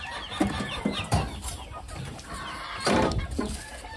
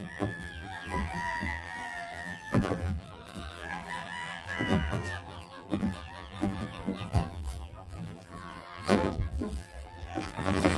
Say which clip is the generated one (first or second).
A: second